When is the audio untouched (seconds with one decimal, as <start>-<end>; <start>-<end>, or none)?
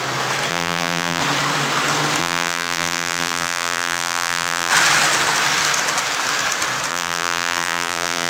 0.0-0.5; 1.2-2.2; 4.7-6.9